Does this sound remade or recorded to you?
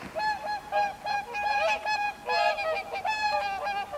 recorded